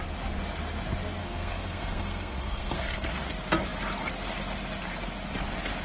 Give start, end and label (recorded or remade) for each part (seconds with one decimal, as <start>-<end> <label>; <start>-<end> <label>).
0.0-1.2 recorded; 1.2-3.1 remade; 3.1-5.8 recorded

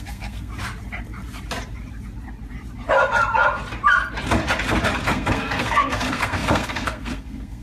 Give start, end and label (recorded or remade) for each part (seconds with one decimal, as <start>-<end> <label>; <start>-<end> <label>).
0.0-0.5 remade; 0.5-5.1 recorded; 5.1-7.6 remade

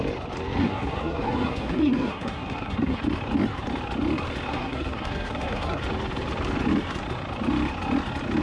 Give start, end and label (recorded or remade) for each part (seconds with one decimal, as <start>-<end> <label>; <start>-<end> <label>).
0.0-0.6 recorded; 0.6-3.0 remade; 3.0-4.5 recorded; 4.5-5.8 remade; 5.8-8.4 recorded

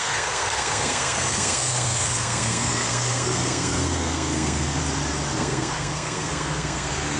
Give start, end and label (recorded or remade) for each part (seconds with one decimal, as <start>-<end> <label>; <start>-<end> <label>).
0.0-4.8 remade; 4.8-5.3 recorded; 5.3-7.2 remade

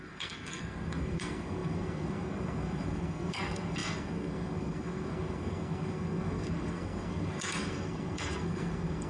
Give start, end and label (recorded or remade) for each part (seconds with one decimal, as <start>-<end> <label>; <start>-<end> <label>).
0.0-9.1 remade

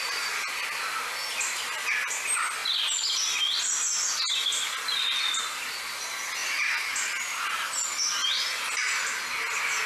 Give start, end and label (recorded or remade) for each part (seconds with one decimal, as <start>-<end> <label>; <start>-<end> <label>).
0.0-9.9 recorded